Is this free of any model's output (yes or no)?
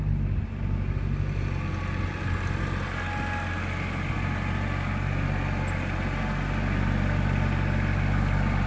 yes